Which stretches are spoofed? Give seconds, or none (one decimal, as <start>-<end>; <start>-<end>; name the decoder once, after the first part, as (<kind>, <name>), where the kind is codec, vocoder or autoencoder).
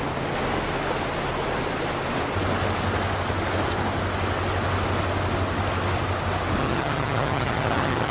6.6-8.1 (vocoder, HiFi-GAN)